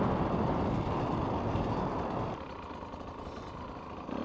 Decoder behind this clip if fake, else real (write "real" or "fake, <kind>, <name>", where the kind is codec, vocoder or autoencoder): real